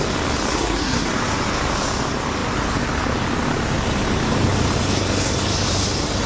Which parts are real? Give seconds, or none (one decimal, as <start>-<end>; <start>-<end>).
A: 0.0-0.5; 1.1-6.3